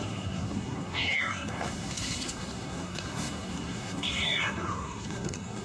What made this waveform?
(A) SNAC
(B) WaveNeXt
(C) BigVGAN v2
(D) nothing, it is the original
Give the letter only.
A